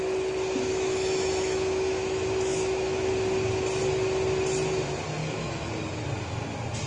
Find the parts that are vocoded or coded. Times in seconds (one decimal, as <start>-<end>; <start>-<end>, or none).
0.7-3.1; 5.2-5.7